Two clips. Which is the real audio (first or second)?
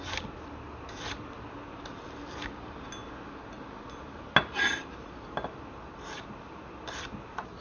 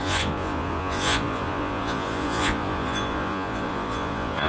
first